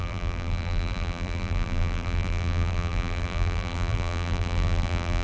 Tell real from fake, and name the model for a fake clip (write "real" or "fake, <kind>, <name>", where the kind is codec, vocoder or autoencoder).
fake, vocoder, BigVGAN v2